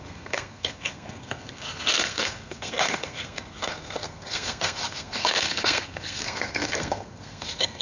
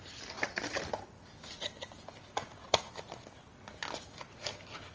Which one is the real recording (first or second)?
second